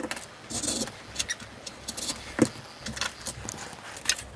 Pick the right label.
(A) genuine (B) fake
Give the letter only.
A